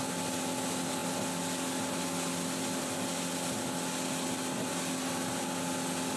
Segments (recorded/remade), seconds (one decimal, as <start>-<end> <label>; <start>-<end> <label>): 0.0-6.2 recorded